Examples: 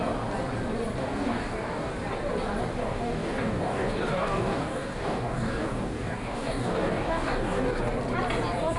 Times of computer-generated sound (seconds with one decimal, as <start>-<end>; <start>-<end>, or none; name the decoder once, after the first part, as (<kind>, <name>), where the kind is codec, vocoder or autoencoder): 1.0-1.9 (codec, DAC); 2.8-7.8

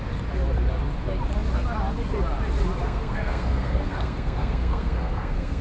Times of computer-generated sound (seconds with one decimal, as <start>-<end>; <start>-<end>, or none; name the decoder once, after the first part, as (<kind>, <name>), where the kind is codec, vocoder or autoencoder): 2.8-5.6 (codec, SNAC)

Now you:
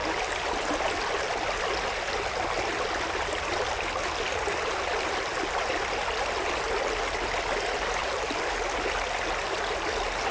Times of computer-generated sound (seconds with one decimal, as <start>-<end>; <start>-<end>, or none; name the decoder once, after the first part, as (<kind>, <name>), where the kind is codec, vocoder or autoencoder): 8.0-8.5 (vocoder, BigVGAN v2)

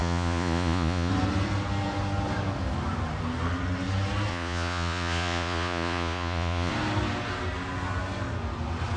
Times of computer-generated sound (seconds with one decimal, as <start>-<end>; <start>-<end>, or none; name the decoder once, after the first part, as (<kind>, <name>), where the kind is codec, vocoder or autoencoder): 0.0-1.1 (vocoder, Vocos); 4.3-6.7